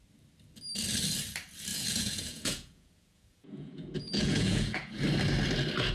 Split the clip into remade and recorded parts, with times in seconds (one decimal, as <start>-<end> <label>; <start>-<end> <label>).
0.0-1.7 recorded; 1.7-5.0 remade; 5.0-5.9 recorded